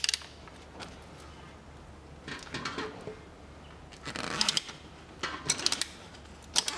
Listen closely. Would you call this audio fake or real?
real